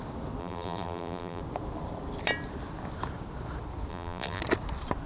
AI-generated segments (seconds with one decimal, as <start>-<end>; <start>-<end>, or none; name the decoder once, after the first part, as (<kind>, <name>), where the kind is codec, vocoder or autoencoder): 0.4-1.4 (vocoder, BigVGAN v2); 3.9-4.4